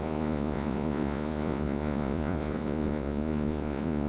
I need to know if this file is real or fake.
fake